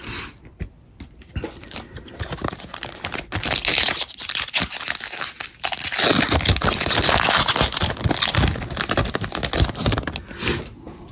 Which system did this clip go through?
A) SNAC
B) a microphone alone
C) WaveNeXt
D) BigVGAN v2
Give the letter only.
B